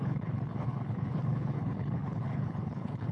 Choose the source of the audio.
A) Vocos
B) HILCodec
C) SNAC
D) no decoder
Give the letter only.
B